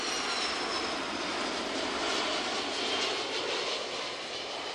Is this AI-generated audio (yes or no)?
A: no